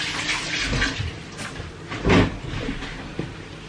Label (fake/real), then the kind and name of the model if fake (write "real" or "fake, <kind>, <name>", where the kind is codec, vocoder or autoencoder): real